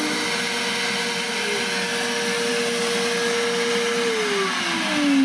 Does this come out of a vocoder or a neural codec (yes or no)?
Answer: no